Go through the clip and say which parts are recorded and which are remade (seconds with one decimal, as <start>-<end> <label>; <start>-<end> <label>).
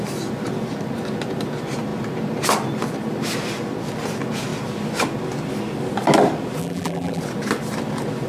0.0-6.6 recorded; 6.6-7.2 remade; 7.2-8.3 recorded